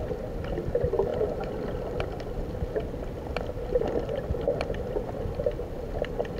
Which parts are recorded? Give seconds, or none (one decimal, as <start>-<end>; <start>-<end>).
0.0-6.4